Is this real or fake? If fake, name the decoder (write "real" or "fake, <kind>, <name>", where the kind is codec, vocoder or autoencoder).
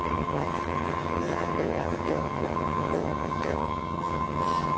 fake, vocoder, HiFi-GAN